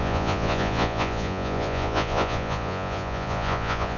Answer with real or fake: fake